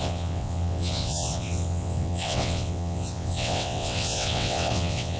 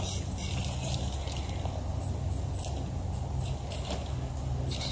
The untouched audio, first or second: second